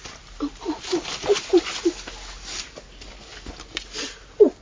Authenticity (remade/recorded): recorded